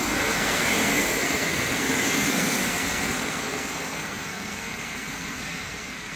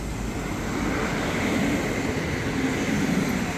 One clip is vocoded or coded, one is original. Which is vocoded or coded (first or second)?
first